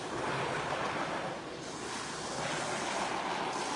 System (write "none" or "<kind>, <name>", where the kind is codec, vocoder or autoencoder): none